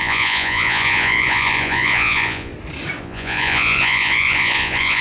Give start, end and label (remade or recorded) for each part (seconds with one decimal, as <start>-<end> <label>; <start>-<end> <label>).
0.0-2.5 remade; 2.5-3.0 recorded; 3.0-5.0 remade